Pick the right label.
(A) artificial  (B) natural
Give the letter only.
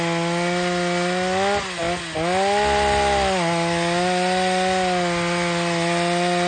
B